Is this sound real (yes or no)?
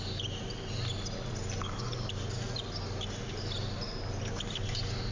yes